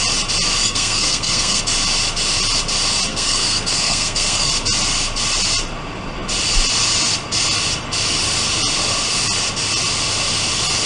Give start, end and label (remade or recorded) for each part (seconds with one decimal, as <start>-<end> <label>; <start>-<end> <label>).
0.0-0.6 recorded; 0.6-1.6 remade; 1.6-3.1 recorded; 3.1-4.5 remade; 4.5-10.9 recorded